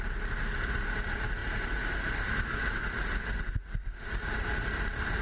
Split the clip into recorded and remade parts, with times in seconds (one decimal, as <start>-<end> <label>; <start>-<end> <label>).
0.0-5.2 recorded